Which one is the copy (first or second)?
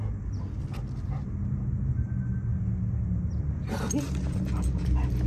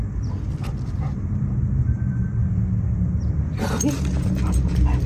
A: second